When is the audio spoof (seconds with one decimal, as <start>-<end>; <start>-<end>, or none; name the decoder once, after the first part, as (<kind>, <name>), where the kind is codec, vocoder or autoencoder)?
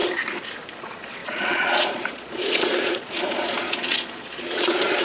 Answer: 0.7-5.0 (vocoder, Vocos)